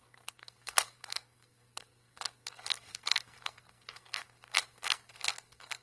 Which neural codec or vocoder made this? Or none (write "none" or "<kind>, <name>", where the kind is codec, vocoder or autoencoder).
codec, SNAC